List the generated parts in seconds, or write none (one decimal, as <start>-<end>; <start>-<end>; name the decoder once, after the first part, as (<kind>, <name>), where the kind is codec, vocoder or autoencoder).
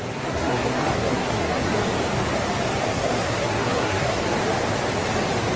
0.0-1.7 (codec, SNAC); 2.9-4.2